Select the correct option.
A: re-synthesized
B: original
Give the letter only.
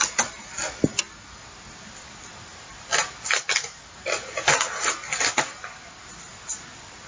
B